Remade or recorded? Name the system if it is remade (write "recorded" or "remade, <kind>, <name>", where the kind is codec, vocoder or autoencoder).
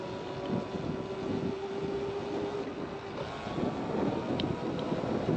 recorded